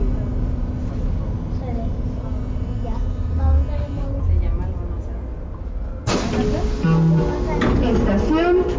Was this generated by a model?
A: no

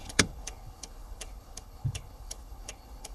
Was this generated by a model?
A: yes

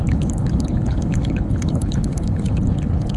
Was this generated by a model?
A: yes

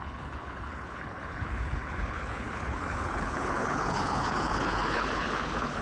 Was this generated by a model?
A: yes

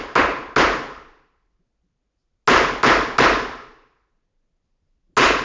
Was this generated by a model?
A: no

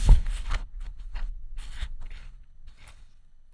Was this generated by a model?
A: yes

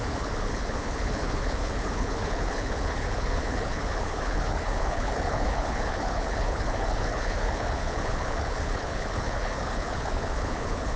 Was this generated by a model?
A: yes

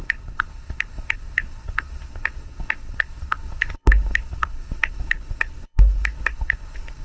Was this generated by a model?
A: yes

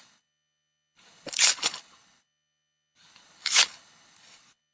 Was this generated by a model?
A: yes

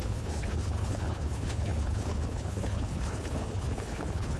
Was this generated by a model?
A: yes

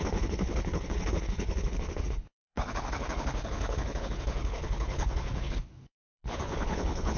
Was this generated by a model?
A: yes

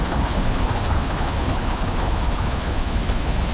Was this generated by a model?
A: yes